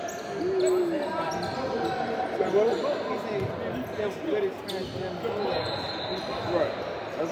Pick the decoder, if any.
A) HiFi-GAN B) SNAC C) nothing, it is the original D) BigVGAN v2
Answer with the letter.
C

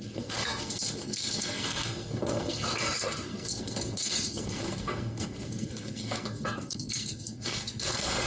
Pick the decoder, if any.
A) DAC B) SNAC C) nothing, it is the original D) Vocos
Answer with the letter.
B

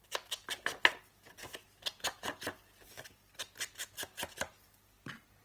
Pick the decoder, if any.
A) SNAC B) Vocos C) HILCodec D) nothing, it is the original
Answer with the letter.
D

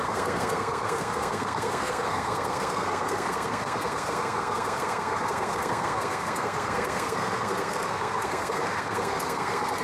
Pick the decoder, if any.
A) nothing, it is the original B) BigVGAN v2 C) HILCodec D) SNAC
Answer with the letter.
D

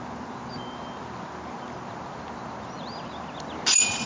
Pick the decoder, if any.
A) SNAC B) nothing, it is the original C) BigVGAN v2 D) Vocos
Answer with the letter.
B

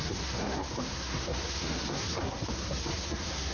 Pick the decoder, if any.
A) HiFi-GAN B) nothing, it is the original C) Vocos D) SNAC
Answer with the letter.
D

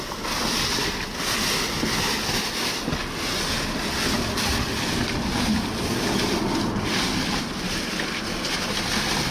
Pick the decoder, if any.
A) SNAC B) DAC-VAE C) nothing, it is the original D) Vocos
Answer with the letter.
C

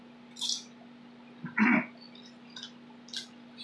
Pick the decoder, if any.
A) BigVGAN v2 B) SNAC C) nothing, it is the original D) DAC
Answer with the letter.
C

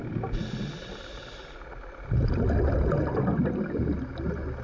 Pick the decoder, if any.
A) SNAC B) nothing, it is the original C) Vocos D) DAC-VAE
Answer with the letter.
B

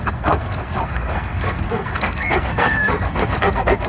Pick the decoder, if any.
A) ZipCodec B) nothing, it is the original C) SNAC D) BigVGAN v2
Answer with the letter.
C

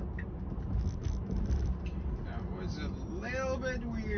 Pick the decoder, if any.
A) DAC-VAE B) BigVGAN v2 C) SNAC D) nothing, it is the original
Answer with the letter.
D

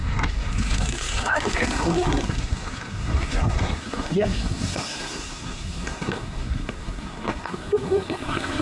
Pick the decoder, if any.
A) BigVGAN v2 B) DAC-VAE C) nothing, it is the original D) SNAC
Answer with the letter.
D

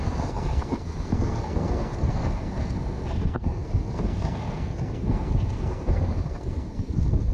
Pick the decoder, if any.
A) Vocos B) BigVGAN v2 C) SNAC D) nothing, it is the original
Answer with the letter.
C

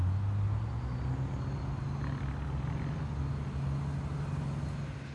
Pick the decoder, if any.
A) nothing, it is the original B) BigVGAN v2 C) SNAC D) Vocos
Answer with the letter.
A